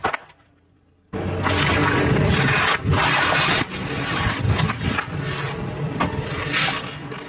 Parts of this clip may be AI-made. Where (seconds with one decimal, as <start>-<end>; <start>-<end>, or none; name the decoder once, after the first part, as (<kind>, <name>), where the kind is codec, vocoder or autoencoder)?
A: none